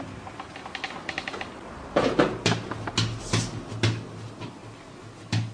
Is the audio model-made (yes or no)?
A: no